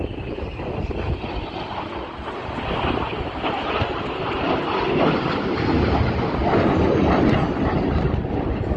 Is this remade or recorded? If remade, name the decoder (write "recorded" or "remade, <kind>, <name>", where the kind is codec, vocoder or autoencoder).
recorded